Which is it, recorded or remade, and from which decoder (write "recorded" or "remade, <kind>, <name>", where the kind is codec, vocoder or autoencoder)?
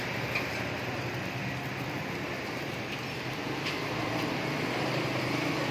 recorded